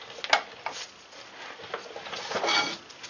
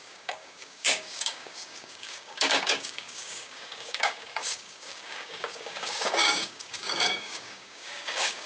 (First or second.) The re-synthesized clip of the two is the second